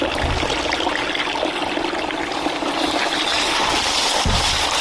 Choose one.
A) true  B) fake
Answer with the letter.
A